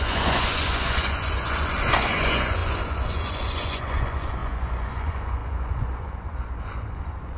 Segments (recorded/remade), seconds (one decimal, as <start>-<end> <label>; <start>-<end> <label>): 0.0-7.4 remade